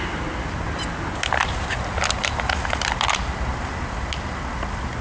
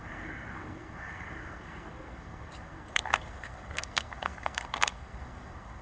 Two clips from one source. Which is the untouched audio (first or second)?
first